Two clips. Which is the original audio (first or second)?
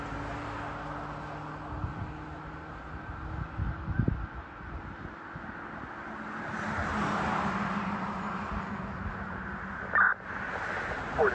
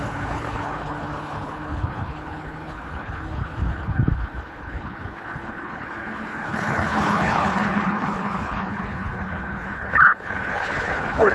first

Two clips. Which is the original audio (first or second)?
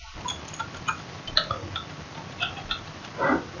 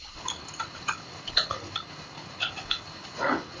first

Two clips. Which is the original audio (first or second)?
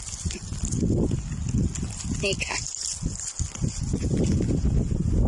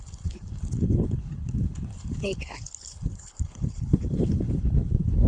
first